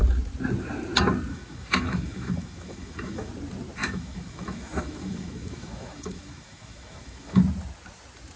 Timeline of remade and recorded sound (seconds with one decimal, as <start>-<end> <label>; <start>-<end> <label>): 0.0-1.3 recorded; 1.3-3.3 remade; 3.3-3.8 recorded; 3.8-7.4 remade; 7.4-8.4 recorded